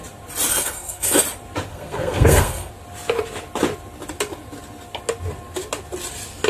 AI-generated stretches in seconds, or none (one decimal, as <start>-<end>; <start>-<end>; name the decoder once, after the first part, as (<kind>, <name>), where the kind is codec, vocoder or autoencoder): 0.5-1.2 (codec, SNAC); 1.7-2.7